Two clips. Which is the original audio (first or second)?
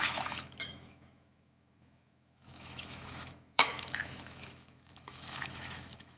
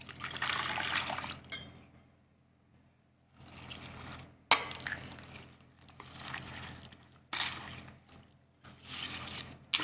second